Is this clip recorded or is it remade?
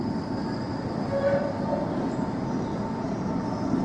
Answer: recorded